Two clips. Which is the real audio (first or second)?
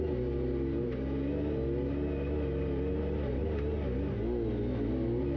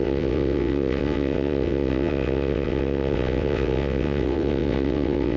first